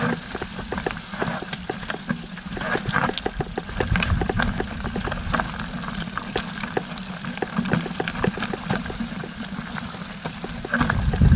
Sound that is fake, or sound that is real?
real